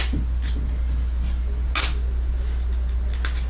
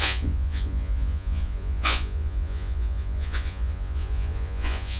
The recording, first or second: first